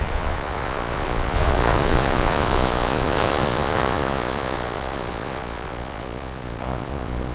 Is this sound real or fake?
fake